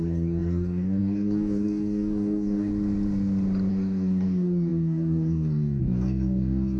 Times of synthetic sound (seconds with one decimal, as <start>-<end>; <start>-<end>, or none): 0.0-2.7; 3.7-6.8